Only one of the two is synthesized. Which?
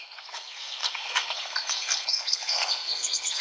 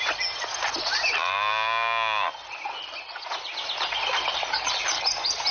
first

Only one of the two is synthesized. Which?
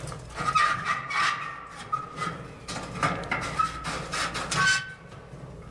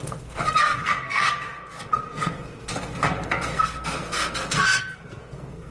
second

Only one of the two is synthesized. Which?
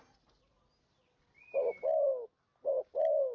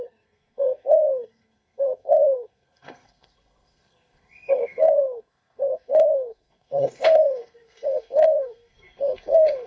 second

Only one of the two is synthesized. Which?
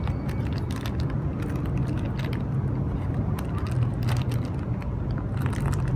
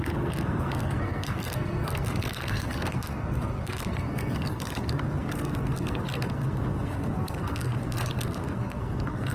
second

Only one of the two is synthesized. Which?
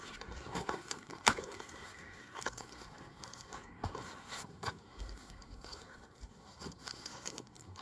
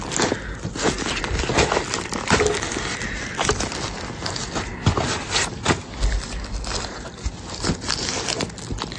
first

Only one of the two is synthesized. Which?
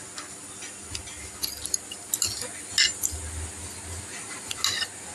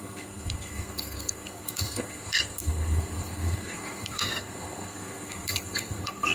second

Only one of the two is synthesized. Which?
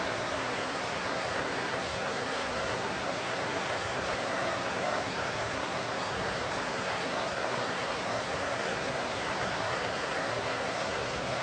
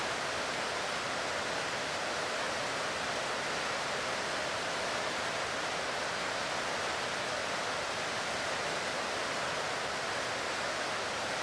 first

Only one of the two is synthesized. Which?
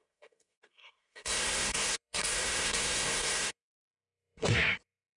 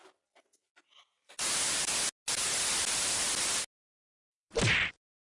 first